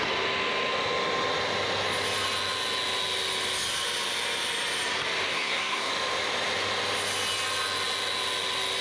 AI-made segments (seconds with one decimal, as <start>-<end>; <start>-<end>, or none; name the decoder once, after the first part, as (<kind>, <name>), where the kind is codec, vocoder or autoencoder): 5.3-5.9 (codec, SNAC)